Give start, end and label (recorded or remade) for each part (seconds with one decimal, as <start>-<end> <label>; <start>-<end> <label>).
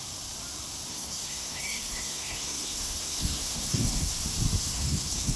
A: 0.0-0.9 recorded; 0.9-4.1 remade; 4.1-4.6 recorded; 4.6-5.4 remade